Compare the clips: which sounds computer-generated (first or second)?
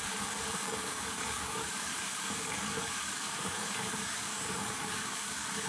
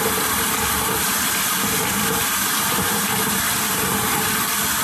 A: first